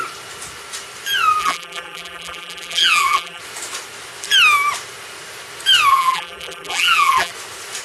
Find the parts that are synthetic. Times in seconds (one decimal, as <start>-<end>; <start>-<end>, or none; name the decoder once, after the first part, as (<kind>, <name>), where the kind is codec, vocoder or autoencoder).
1.4-3.4 (vocoder, BigVGAN v2); 5.9-7.3